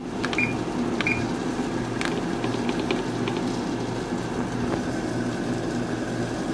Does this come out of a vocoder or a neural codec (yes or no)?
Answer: no